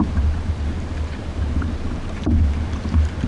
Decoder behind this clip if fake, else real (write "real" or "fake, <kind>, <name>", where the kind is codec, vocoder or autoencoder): fake, vocoder, BigVGAN v2